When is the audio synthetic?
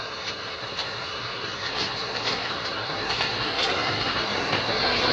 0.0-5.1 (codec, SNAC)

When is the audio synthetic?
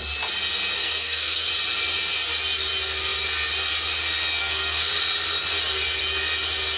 0.8-1.5 (codec, SNAC); 4.4-4.9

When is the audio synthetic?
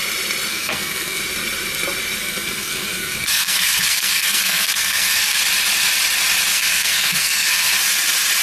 0.5-1.2 (codec, SNAC); 2.2-5.4; 6.5-7.7